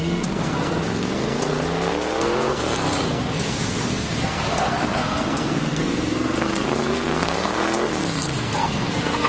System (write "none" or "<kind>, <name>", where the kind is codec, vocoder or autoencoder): codec, SNAC